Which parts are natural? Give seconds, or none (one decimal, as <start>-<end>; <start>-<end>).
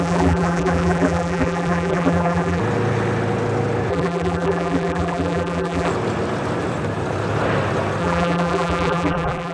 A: 2.6-3.9; 5.9-8.0